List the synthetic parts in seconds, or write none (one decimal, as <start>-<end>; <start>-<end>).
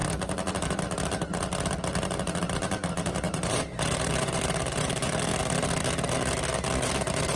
2.4-5.3; 6.8-7.4